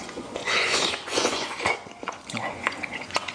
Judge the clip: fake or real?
fake